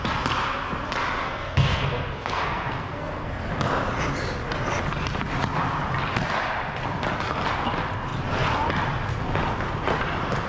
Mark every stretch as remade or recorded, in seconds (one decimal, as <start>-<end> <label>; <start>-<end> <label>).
0.0-1.2 recorded; 1.2-3.5 remade; 3.5-10.5 recorded